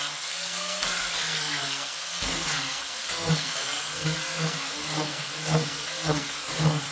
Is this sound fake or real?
fake